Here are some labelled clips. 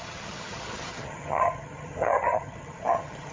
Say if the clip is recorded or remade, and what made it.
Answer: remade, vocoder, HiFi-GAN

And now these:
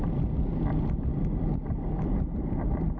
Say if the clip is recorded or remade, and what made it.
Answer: recorded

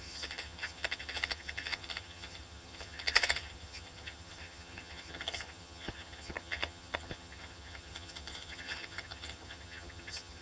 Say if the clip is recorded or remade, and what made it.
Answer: remade, vocoder, HiFi-GAN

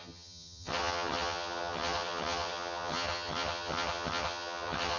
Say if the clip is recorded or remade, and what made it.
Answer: remade, vocoder, HiFi-GAN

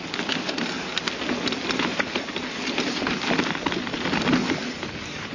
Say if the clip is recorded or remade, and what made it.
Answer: recorded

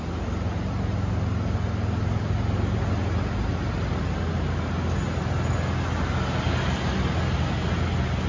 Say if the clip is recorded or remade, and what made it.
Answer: recorded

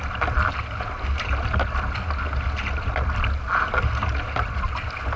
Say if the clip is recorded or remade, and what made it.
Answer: recorded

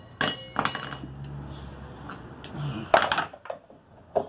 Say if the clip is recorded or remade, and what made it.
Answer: recorded